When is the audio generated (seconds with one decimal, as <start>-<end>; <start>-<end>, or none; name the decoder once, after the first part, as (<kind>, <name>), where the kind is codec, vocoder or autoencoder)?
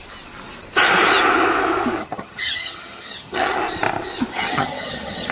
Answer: 2.0-3.6 (vocoder, HiFi-GAN); 4.3-5.3